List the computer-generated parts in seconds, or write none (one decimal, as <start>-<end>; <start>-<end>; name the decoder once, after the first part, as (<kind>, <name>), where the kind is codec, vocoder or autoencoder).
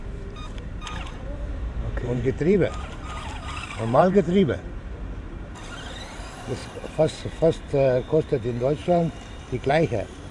0.0-10.3 (vocoder, BigVGAN v2)